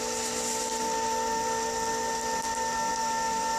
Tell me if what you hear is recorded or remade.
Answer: recorded